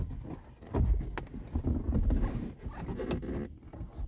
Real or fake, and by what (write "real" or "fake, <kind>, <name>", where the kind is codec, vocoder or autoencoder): real